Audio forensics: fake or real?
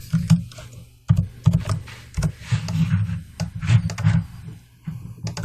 real